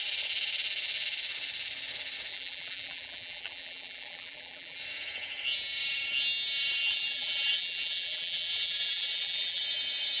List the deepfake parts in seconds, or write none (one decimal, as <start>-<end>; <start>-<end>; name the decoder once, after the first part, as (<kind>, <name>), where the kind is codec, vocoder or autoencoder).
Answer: 2.3-4.8 (vocoder, BigVGAN v2); 6.8-9.6

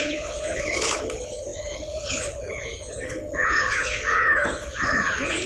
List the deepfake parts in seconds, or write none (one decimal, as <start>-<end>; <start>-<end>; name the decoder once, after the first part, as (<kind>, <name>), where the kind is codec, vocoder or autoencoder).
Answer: 0.0-5.5 (codec, HILCodec)